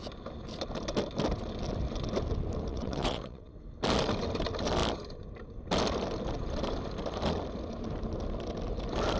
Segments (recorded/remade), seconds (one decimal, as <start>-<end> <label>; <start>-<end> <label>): 0.0-2.7 recorded; 2.7-3.5 remade; 3.5-9.2 recorded